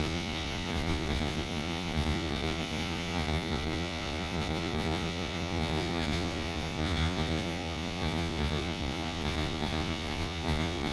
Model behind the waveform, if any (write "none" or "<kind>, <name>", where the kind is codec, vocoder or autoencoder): vocoder, Vocos